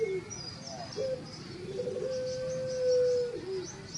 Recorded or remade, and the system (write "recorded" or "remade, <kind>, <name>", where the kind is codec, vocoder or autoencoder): recorded